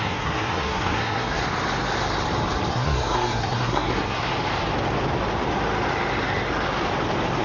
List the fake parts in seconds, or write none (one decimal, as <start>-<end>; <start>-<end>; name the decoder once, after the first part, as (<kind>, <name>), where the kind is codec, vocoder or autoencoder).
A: 0.0-1.4 (codec, SNAC); 2.7-4.3